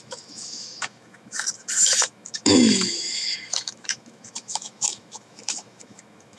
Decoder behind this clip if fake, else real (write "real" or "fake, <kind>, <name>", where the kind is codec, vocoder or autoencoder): fake, autoencoder, DAC-VAE